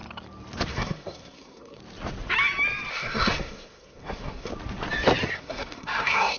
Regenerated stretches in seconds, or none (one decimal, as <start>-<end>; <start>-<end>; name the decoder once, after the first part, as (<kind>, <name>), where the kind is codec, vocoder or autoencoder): 0.7-1.8 (codec, SNAC); 2.9-4.5; 5.3-6.4